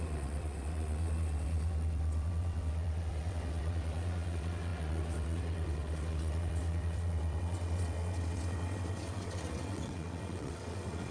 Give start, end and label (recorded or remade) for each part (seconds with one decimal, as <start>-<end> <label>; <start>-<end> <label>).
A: 0.0-11.1 remade